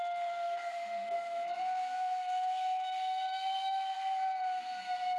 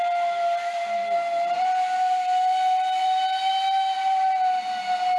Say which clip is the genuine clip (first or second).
second